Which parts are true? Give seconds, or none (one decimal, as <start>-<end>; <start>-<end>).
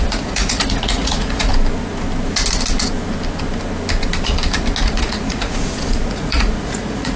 1.5-4.8